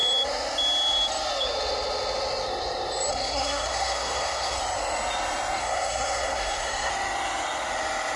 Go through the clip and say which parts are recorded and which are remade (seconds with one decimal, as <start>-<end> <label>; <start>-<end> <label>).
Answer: 0.0-3.1 recorded; 3.1-4.6 remade; 4.6-5.6 recorded; 5.6-6.9 remade; 6.9-8.2 recorded